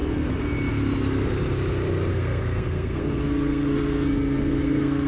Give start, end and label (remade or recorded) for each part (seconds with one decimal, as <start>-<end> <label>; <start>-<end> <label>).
0.0-2.1 recorded; 2.1-5.1 remade